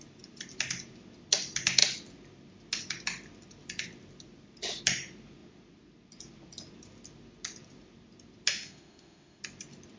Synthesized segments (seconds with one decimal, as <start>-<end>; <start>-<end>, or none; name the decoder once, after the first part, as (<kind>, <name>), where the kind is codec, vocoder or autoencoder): 8.5-9.4 (autoencoder, DAC-VAE)